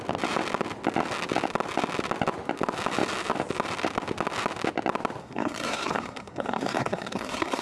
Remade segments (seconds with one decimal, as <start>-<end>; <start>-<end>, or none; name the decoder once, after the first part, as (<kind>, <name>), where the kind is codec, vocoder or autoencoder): 5.2-7.6 (codec, SNAC)